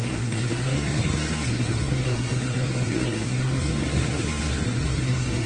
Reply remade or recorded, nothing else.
remade